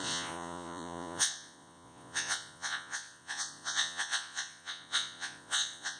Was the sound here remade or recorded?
remade